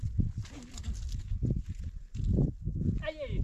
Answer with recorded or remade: recorded